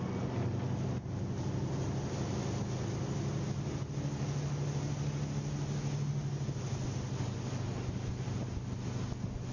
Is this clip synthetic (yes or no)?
no